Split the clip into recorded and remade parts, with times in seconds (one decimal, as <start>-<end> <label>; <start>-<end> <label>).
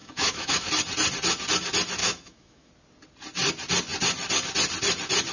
0.0-0.7 remade; 0.7-2.0 recorded; 2.0-2.7 remade; 2.7-5.3 recorded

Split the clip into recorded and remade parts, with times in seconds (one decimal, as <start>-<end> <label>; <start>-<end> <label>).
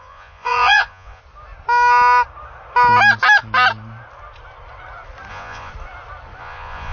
0.0-1.2 remade; 1.2-5.3 recorded; 5.3-5.7 remade; 5.7-6.4 recorded; 6.4-6.9 remade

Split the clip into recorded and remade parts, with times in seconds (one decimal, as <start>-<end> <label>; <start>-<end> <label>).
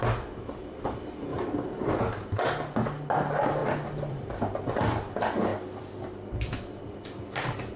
0.0-1.3 recorded; 1.3-2.0 remade; 2.0-3.6 recorded; 3.6-4.6 remade; 4.6-5.5 recorded; 5.5-6.9 remade; 6.9-7.8 recorded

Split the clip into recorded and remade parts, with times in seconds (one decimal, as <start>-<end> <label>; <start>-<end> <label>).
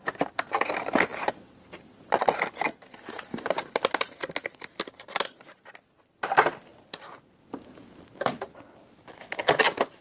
0.0-10.0 recorded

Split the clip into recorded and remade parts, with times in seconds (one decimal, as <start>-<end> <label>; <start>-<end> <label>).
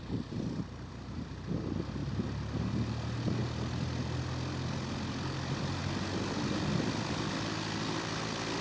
0.0-8.6 recorded